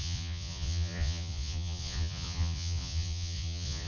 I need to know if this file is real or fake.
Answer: fake